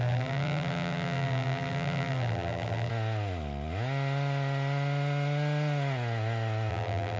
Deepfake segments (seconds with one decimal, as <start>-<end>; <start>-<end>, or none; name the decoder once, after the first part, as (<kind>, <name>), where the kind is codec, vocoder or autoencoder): 0.0-2.9 (vocoder, BigVGAN v2); 6.7-7.2